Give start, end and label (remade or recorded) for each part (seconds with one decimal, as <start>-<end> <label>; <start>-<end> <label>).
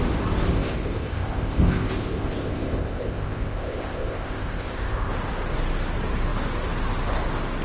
0.0-0.5 recorded; 0.5-5.1 remade; 5.1-7.6 recorded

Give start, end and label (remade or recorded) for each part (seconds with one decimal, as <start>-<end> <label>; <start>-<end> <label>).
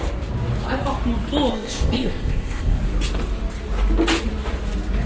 0.0-1.5 recorded; 1.5-2.8 remade; 2.8-5.1 recorded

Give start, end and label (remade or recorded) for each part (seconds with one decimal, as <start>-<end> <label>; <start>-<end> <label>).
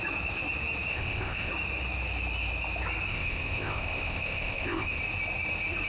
0.0-0.9 recorded; 0.9-1.5 remade; 1.5-3.1 recorded; 3.1-5.0 remade; 5.0-5.9 recorded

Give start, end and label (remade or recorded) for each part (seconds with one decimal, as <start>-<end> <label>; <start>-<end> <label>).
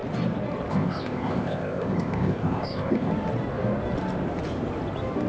0.0-0.7 recorded; 0.7-3.1 remade; 3.1-5.3 recorded